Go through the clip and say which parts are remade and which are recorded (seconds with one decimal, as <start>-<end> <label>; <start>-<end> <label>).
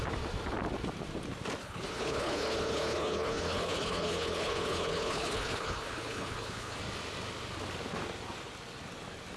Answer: 0.0-1.6 recorded; 1.6-6.8 remade; 6.8-9.4 recorded